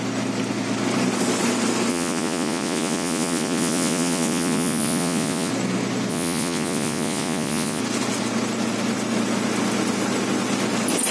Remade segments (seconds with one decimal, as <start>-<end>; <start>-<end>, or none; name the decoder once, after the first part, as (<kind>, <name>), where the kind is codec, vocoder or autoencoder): 1.9-5.5 (vocoder, Vocos); 6.1-7.8